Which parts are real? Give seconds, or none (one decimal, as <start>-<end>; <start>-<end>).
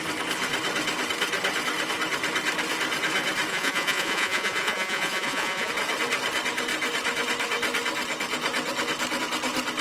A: 0.0-3.5; 5.7-9.8